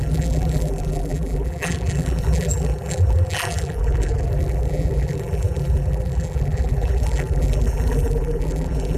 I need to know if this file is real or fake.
fake